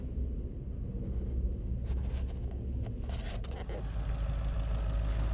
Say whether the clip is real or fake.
real